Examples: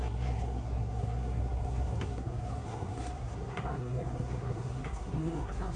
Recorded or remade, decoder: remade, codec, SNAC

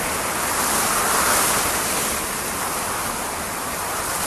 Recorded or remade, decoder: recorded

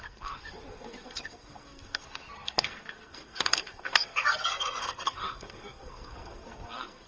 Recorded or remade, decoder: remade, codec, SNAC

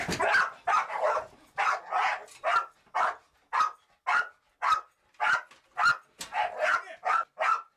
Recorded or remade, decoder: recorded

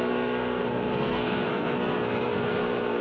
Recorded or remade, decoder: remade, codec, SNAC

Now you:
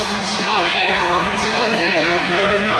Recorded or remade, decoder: remade, codec, SNAC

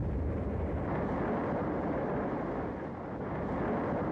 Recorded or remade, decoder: recorded